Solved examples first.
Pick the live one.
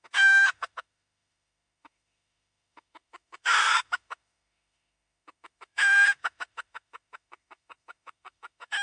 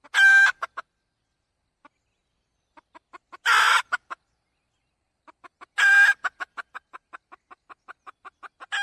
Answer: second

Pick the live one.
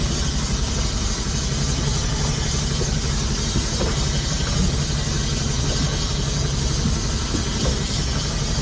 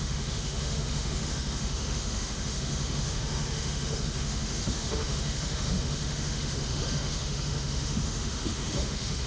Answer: first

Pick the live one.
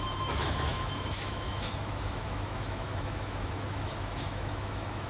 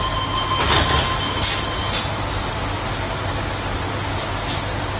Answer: second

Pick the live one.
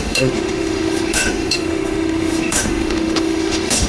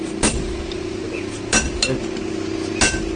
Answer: second